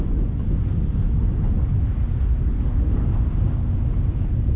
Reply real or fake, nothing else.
real